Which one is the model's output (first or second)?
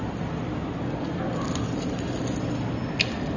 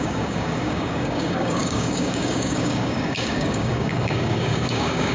second